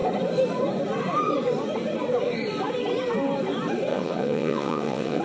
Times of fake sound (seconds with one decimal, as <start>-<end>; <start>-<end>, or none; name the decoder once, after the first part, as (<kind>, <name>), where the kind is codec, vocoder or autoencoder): 3.9-5.2 (vocoder, WaveNeXt)